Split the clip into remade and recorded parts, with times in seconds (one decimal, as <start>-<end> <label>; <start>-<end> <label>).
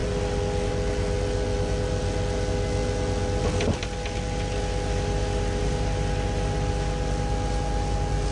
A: 0.0-8.3 recorded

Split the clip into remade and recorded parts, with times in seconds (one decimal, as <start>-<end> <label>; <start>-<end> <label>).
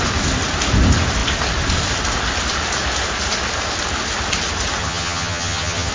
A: 0.0-4.8 recorded; 4.8-5.9 remade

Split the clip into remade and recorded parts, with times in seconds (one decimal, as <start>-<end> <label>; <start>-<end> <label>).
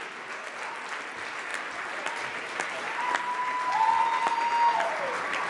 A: 0.0-5.5 recorded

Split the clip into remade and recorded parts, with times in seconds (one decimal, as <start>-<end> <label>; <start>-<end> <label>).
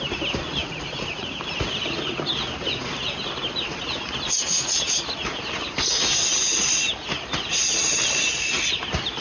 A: 0.0-0.6 recorded; 0.6-1.4 remade; 1.4-9.2 recorded